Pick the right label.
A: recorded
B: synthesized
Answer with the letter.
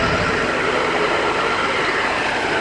A